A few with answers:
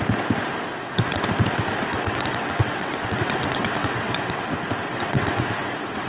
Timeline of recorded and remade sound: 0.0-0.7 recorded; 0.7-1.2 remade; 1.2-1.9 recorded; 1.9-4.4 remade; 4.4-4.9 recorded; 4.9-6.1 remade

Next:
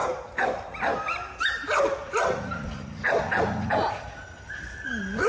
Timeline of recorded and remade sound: 0.0-3.2 remade; 3.2-5.3 recorded